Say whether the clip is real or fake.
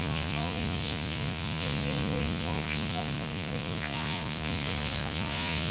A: fake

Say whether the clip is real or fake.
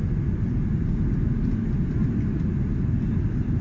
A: real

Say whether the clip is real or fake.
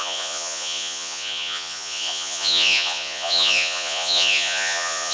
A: fake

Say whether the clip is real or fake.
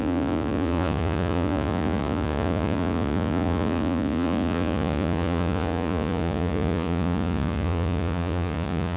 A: fake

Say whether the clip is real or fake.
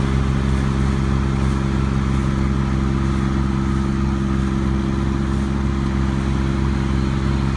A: real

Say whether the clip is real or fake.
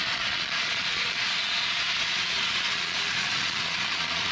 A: fake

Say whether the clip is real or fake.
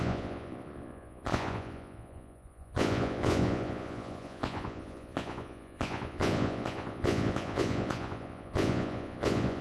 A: fake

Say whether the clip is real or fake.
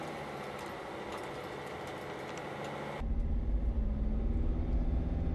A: real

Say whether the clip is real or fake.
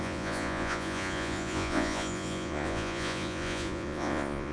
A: fake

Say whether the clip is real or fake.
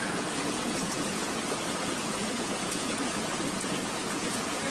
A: fake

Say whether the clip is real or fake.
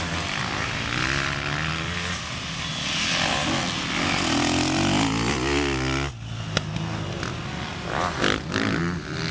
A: real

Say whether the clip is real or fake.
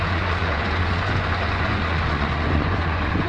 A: fake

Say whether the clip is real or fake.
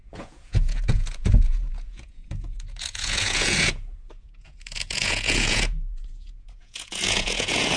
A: fake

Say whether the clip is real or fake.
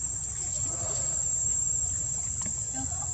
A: real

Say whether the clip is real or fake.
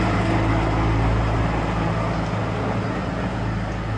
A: real